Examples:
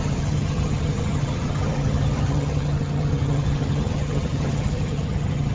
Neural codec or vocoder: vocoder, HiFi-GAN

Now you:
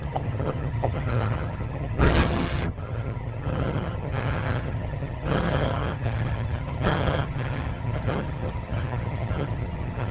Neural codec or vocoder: vocoder, HiFi-GAN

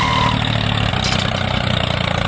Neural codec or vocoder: none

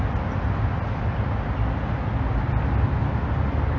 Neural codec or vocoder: none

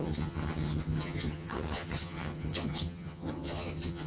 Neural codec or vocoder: vocoder, HiFi-GAN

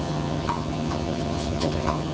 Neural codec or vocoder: vocoder, HiFi-GAN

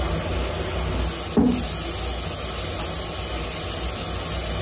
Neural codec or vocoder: none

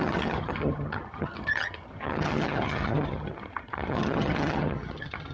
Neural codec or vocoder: vocoder, HiFi-GAN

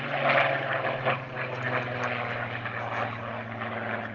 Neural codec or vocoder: none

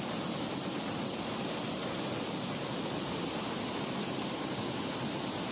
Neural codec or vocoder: none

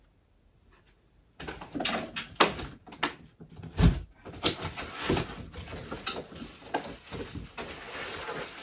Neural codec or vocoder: none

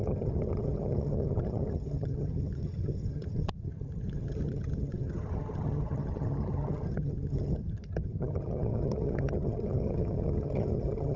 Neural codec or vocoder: vocoder, HiFi-GAN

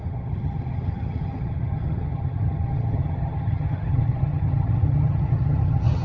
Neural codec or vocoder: vocoder, HiFi-GAN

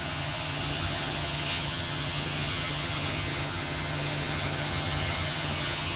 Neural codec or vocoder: vocoder, HiFi-GAN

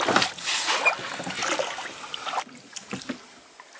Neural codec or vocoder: none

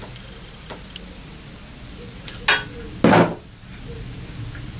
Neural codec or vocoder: none